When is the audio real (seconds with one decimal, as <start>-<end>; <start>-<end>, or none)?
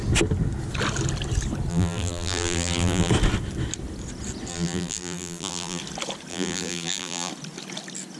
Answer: 0.0-1.7; 3.1-4.5; 5.8-6.3; 7.3-8.2